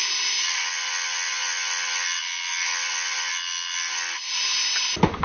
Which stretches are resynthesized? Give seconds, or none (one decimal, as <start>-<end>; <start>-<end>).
none